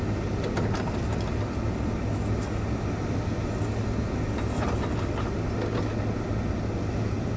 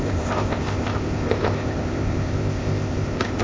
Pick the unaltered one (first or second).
first